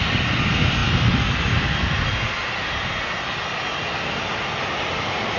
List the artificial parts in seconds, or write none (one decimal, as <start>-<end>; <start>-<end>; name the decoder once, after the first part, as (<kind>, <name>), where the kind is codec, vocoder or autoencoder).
none